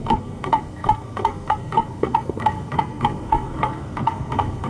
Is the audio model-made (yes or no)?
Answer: yes